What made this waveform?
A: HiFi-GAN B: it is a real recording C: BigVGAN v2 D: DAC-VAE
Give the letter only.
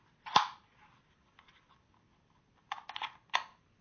B